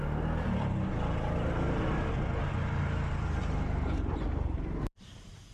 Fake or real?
real